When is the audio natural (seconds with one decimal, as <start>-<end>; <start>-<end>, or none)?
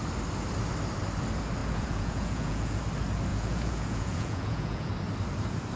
0.0-1.6; 2.8-3.3; 4.9-5.8